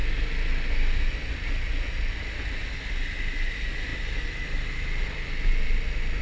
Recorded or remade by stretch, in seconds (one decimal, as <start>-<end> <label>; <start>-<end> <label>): 0.0-6.2 recorded

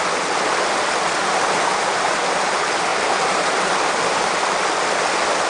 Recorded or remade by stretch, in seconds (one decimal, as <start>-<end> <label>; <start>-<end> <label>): 0.0-1.2 recorded; 1.2-2.5 remade; 2.5-2.9 recorded; 2.9-4.3 remade; 4.3-5.5 recorded

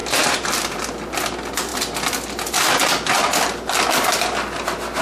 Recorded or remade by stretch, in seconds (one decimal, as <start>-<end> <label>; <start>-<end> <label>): 0.0-0.9 remade; 0.9-5.0 recorded

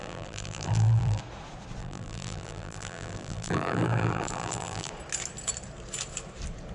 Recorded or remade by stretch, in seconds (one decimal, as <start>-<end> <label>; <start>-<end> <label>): 0.0-1.2 remade; 1.2-1.8 recorded; 1.8-4.9 remade; 4.9-6.7 recorded

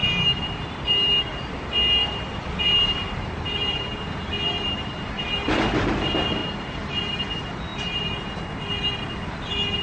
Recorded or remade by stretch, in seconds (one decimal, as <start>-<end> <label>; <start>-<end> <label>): 0.0-0.8 remade; 0.8-2.0 recorded; 2.0-5.3 remade; 5.3-9.8 recorded

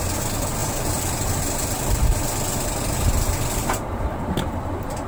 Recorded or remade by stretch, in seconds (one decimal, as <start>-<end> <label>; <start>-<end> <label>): 0.0-5.1 recorded